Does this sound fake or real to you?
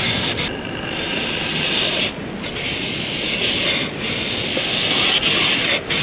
real